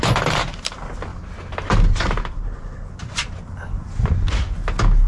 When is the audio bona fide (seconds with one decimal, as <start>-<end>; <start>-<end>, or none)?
0.0-5.1